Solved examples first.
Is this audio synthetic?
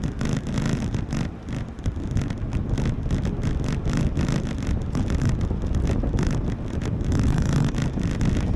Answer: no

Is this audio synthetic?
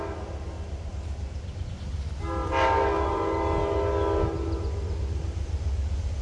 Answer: no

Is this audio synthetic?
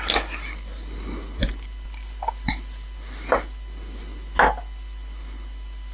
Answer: no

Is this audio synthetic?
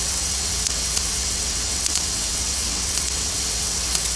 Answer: yes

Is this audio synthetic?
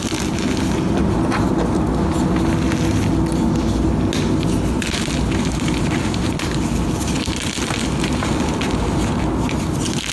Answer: no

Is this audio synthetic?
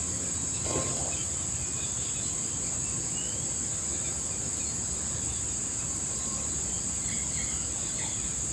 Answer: no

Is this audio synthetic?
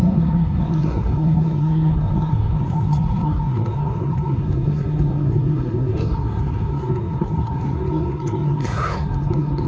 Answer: yes